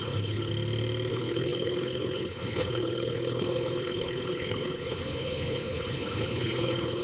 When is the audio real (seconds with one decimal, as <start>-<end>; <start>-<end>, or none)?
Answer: 0.5-1.1